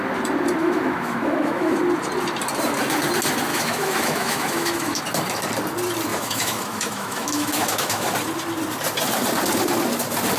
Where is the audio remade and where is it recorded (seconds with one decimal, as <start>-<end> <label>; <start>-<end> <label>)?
0.0-0.6 recorded; 0.6-1.8 remade; 1.8-3.5 recorded; 3.5-5.0 remade; 5.0-6.1 recorded; 6.1-8.1 remade; 8.1-10.4 recorded